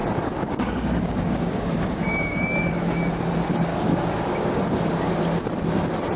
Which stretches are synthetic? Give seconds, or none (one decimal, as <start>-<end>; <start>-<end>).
0.0-3.0; 3.7-5.1